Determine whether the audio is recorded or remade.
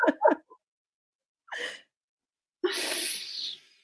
recorded